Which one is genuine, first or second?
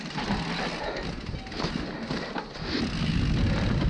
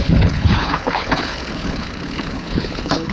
first